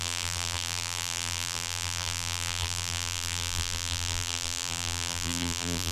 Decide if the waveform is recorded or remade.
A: remade